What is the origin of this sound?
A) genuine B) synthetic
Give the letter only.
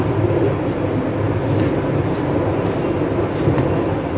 A